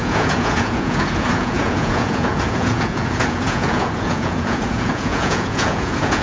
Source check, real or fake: fake